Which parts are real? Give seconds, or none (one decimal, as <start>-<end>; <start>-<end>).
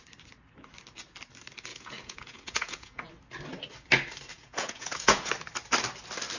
0.0-1.7; 3.1-4.3; 5.3-6.4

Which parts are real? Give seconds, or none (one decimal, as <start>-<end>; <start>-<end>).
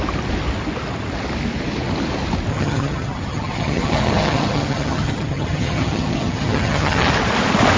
0.0-2.5; 7.1-7.8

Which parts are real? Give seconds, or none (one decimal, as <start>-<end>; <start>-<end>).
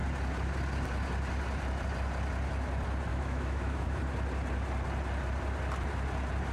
0.0-3.1; 4.0-6.5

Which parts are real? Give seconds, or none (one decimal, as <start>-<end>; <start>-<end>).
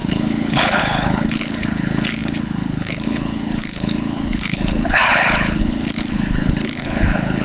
none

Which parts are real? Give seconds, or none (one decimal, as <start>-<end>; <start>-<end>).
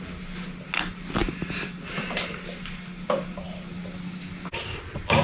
0.0-5.2